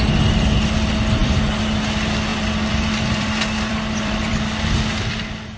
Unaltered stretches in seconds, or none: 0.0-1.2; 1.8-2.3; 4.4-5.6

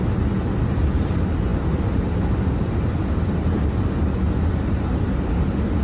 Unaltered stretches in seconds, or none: 0.0-5.8